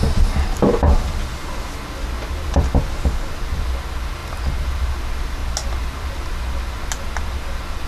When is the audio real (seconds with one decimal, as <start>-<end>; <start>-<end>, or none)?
0.0-7.9